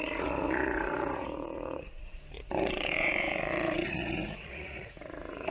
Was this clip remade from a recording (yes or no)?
yes